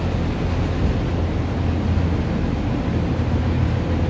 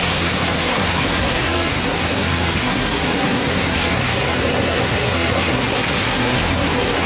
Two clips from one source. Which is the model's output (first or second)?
second